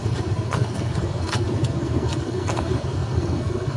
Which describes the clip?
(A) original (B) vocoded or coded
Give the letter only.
B